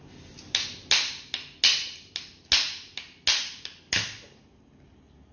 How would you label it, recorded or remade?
recorded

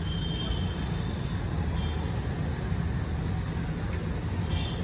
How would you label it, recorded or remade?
recorded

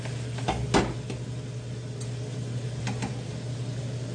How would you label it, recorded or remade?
recorded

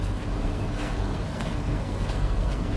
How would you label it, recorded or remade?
remade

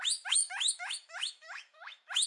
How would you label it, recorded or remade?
remade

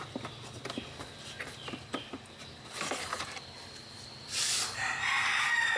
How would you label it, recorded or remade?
recorded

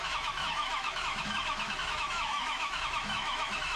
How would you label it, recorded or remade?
remade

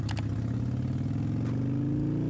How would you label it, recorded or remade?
recorded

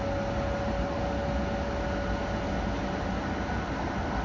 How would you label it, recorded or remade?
recorded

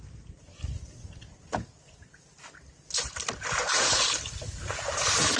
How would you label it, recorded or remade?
recorded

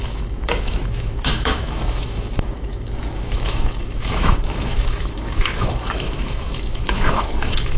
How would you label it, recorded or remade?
remade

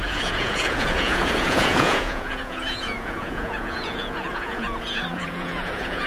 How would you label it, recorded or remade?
remade